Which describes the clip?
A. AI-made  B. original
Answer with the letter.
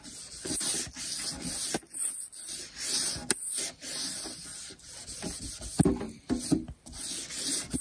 B